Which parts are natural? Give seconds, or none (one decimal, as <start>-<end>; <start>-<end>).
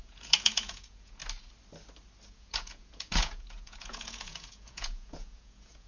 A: 1.2-2.3